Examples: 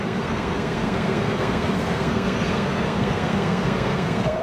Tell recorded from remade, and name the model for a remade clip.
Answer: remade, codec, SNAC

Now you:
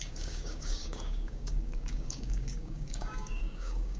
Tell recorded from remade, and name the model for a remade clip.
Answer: remade, codec, DAC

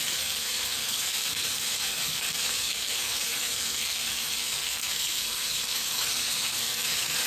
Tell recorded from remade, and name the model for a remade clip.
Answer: remade, codec, SNAC